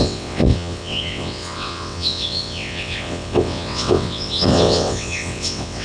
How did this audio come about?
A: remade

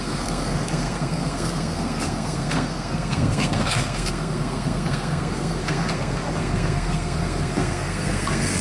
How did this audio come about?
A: remade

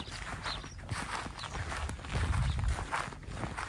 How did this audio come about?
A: recorded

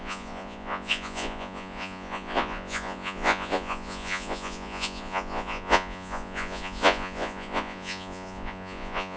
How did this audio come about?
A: remade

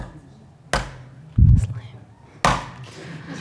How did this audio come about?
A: recorded